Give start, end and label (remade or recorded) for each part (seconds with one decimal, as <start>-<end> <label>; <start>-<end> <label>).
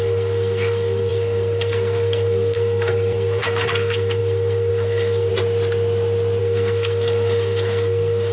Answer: 0.0-5.3 remade; 5.3-6.4 recorded; 6.4-8.3 remade